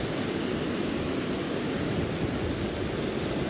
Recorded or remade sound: recorded